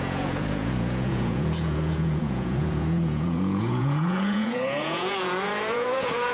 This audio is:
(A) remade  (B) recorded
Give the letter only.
A